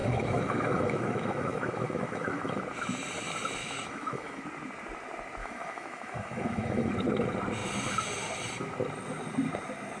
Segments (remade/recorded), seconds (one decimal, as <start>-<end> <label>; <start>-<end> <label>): 0.0-2.6 remade; 2.6-3.6 recorded; 3.6-4.4 remade; 4.4-5.4 recorded; 5.4-6.9 remade; 6.9-10.0 recorded